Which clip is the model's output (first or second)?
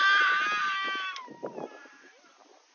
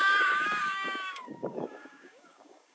second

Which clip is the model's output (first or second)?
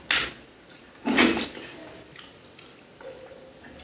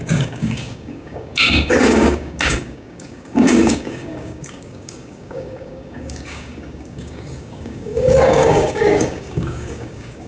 second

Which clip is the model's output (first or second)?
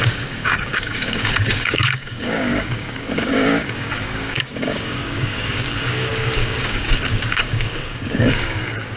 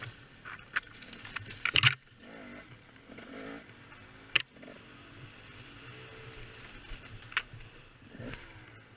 first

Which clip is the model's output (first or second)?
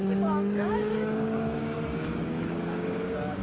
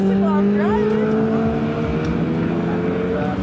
first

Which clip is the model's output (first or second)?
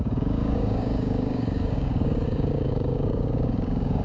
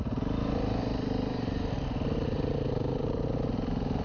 first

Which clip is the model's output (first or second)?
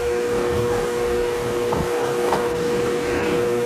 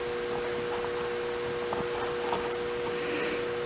first